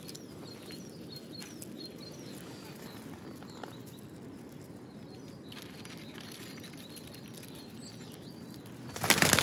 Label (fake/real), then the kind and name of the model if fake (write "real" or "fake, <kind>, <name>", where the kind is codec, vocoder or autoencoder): fake, vocoder, BigVGAN v2